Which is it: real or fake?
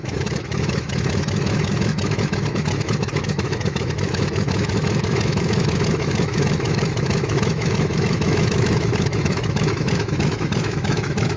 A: fake